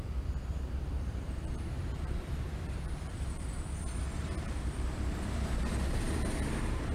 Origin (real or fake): fake